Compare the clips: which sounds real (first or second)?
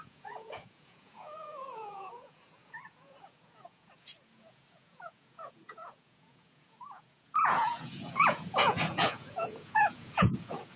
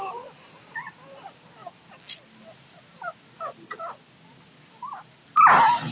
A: second